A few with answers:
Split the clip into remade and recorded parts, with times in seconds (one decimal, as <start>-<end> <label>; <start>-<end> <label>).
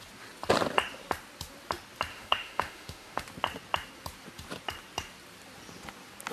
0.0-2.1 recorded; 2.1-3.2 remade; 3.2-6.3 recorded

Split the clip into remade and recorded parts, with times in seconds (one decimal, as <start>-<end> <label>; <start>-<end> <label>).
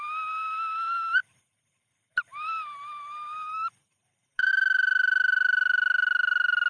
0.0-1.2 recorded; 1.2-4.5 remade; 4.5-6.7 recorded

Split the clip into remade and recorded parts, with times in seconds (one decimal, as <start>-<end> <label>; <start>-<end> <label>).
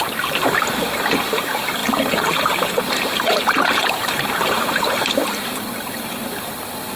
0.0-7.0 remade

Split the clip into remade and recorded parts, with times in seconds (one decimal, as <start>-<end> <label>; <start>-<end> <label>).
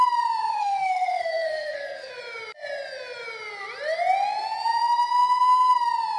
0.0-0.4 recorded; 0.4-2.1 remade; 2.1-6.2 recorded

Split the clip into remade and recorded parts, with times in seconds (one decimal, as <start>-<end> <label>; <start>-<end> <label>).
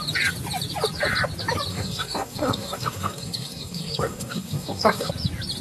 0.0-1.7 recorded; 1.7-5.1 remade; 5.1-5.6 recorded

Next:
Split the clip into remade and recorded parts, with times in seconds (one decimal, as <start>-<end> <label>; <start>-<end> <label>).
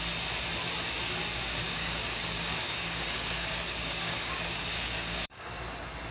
0.0-1.8 recorded; 1.8-5.5 remade; 5.5-6.1 recorded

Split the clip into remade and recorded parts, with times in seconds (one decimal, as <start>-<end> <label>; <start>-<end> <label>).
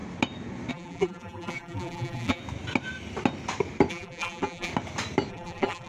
0.0-0.7 recorded; 0.7-2.4 remade; 2.4-3.9 recorded; 3.9-4.7 remade; 4.7-5.3 recorded; 5.3-5.9 remade